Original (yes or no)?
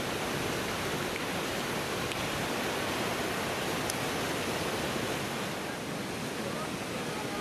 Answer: yes